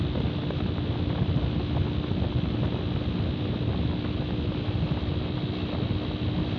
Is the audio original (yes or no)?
yes